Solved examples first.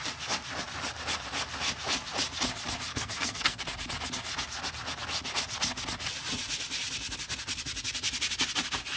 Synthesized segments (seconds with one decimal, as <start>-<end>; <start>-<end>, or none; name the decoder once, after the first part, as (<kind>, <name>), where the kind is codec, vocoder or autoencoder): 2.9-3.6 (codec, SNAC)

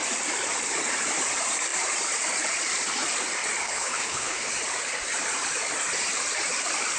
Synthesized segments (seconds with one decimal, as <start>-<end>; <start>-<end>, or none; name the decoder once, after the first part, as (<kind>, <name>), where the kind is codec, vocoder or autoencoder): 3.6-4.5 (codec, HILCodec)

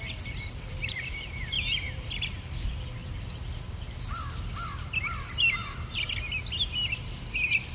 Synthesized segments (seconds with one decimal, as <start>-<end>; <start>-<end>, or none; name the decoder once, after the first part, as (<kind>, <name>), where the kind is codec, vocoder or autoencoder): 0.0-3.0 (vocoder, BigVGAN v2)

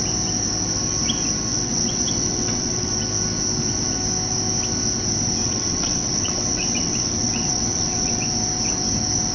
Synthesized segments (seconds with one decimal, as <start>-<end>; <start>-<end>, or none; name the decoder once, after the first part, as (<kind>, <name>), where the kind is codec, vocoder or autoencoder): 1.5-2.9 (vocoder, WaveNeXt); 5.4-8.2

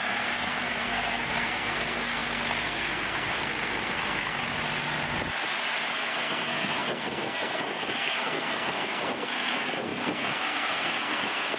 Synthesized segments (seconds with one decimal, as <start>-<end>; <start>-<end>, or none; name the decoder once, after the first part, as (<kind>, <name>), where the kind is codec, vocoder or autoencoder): 0.0-4.4 (codec, SNAC); 5.9-11.6

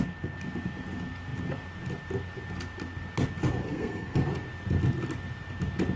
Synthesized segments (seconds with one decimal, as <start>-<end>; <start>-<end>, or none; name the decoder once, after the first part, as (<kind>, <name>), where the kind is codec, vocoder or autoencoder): 3.6-4.2 (codec, SNAC)

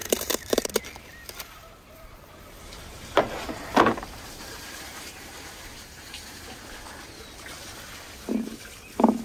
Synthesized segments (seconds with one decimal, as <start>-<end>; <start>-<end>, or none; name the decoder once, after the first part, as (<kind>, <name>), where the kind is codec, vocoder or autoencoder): 0.0-0.7 (vocoder, BigVGAN v2); 2.6-6.6